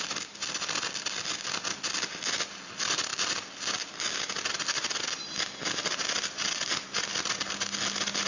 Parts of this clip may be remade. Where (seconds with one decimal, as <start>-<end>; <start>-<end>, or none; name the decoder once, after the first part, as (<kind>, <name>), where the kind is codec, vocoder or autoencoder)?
none